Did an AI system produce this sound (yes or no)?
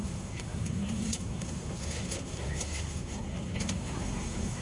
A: yes